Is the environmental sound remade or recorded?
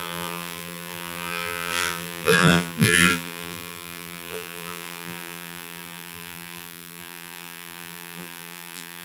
remade